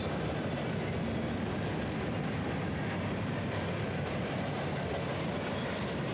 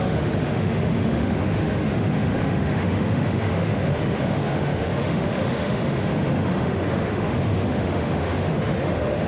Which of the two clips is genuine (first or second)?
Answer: first